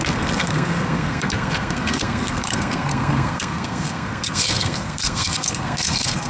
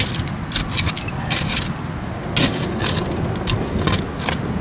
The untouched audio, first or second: second